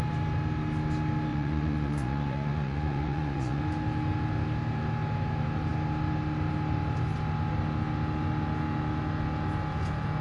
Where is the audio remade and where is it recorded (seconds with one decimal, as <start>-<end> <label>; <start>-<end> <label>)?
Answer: 0.0-1.3 recorded; 1.3-3.6 remade; 3.6-10.2 recorded